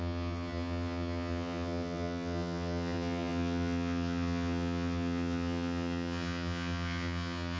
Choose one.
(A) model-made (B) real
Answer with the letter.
A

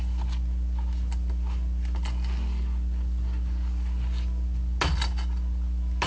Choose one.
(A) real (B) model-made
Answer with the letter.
A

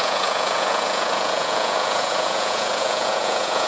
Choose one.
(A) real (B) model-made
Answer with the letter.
B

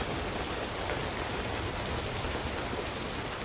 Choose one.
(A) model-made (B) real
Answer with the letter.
B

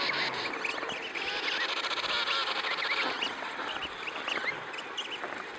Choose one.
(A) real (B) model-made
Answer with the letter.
A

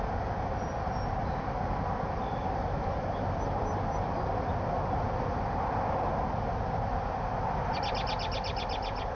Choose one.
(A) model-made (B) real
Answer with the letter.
B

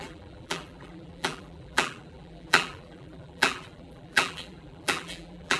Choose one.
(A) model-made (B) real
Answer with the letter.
A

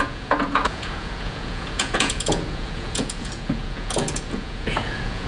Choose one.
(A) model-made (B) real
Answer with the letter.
A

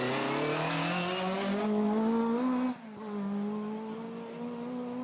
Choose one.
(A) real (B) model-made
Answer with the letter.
A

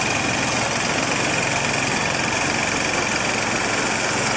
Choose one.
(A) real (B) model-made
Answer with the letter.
A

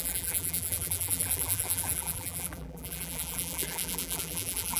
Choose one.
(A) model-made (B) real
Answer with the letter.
A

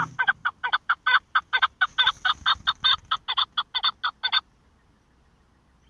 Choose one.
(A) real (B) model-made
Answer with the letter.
A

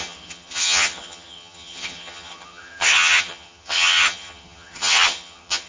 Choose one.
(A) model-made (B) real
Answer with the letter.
A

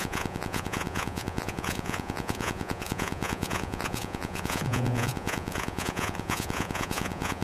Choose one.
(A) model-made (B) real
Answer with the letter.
A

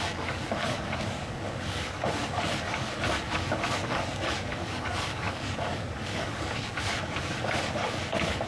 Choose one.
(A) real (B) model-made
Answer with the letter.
B